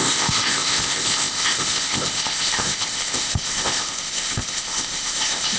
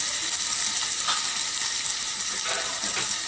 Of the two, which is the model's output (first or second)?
first